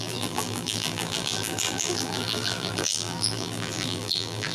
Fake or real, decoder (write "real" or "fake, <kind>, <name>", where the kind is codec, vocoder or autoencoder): fake, vocoder, BigVGAN v2